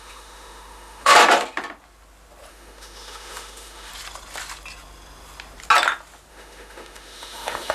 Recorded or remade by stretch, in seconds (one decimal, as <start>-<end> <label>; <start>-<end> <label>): 0.0-1.1 remade; 1.1-2.5 recorded; 2.5-3.9 remade; 3.9-6.3 recorded; 6.3-7.7 remade